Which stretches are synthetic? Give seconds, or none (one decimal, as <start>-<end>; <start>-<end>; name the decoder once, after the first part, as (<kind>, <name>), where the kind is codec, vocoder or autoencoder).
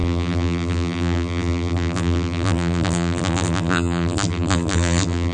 0.0-5.3 (vocoder, BigVGAN v2)